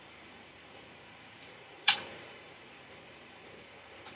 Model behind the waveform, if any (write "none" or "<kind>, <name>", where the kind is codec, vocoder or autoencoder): vocoder, Vocos